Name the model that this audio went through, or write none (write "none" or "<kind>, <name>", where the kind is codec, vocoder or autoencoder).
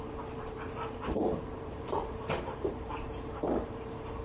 vocoder, BigVGAN v2